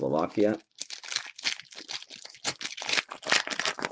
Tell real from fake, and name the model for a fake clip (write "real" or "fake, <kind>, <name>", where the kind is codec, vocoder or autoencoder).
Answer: real